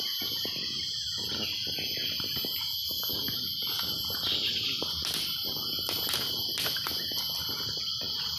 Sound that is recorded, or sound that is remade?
recorded